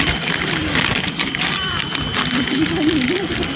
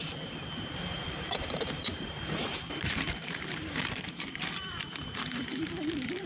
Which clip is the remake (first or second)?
second